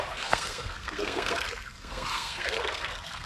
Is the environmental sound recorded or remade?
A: remade